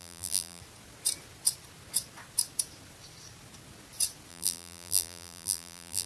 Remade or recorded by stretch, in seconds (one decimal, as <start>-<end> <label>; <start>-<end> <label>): 0.0-0.6 remade; 0.6-4.3 recorded; 4.3-6.1 remade